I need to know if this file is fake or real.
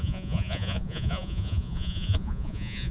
fake